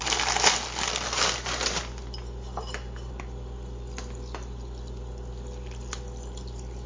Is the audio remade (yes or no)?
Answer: no